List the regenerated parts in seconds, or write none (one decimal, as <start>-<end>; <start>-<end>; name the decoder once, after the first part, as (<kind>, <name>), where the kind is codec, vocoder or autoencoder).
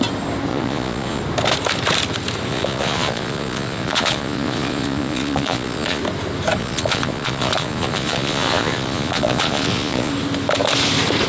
0.5-1.2 (vocoder, Vocos); 2.5-6.0; 6.6-10.1